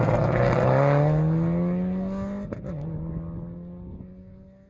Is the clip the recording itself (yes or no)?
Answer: yes